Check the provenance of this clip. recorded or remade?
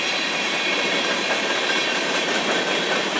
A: remade